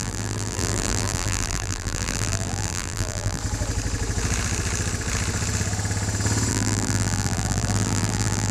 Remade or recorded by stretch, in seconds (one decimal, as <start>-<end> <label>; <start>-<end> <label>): 0.0-3.4 remade; 3.4-6.5 recorded; 6.5-8.5 remade